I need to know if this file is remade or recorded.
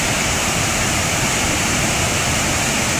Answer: remade